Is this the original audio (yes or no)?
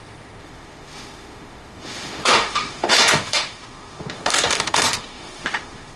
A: no